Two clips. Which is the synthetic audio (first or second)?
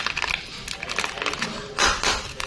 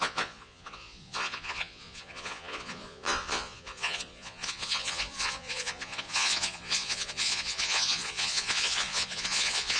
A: second